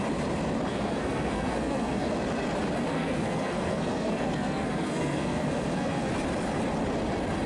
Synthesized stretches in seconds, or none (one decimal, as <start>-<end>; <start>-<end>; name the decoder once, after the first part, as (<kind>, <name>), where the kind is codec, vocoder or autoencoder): 0.7-2.1 (codec, SNAC); 2.9-6.1